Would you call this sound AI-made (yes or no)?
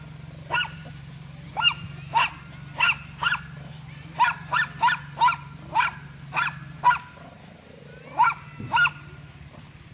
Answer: no